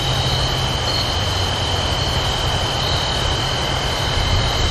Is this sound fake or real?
real